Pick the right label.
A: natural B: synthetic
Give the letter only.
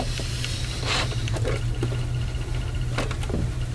A